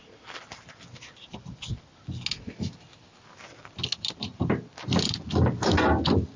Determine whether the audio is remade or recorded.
recorded